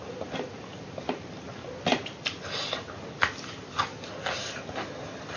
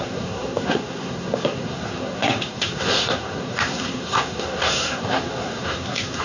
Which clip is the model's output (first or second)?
second